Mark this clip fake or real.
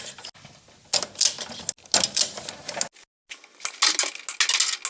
real